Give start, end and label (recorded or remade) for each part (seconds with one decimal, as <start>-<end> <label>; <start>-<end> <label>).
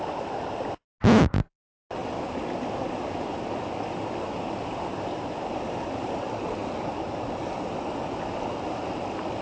0.0-9.4 recorded